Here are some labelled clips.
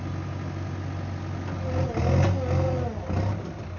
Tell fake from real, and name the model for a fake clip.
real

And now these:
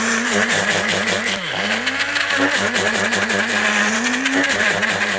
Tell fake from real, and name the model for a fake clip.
real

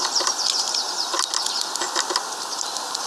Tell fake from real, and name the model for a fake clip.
real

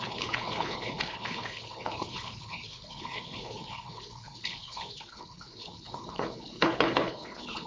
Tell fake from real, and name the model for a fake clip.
fake, codec, HILCodec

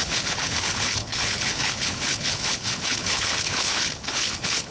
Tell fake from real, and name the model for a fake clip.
fake, codec, HILCodec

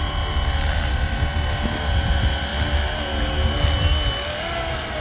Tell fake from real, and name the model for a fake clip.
real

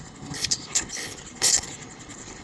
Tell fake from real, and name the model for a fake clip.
fake, codec, HILCodec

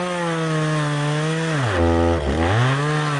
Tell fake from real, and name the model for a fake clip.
real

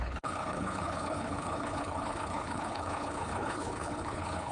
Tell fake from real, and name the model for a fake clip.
fake, codec, HILCodec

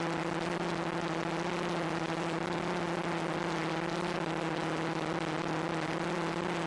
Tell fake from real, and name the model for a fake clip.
real